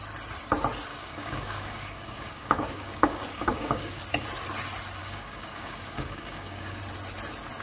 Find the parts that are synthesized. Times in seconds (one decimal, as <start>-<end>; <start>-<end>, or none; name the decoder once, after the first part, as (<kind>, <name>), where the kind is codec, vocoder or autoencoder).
0.9-4.0 (codec, DAC); 5.0-6.8